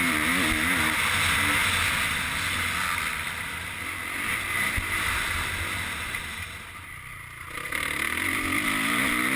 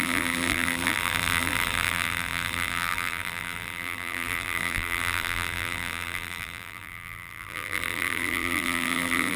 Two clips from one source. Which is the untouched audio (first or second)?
first